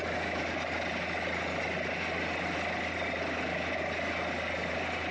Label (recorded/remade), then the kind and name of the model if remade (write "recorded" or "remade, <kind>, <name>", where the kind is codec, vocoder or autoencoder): recorded